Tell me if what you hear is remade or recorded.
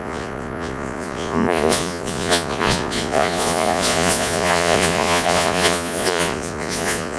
remade